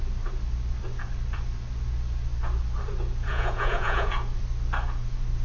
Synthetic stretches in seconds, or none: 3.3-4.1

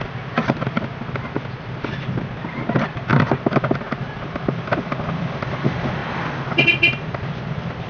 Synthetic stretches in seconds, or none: none

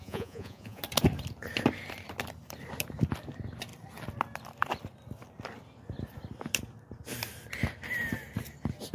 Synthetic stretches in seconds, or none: 0.0-0.8

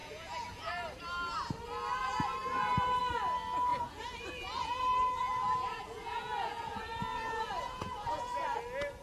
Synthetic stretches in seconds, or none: 0.0-0.7; 3.7-8.6

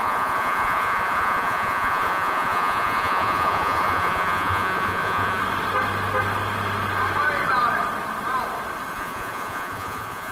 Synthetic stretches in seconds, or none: 0.0-5.4; 8.9-10.3